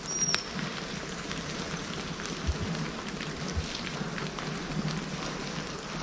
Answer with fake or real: real